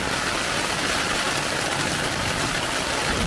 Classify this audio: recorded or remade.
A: recorded